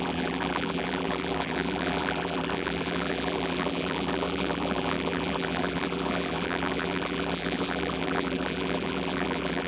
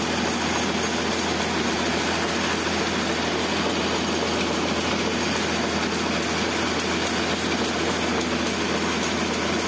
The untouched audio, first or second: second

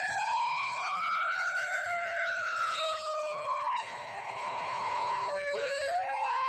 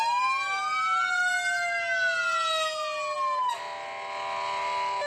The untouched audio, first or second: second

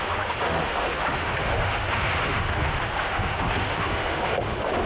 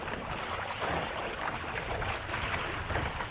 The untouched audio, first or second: second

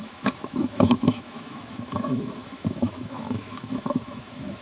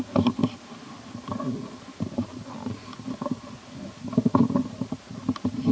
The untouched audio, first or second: second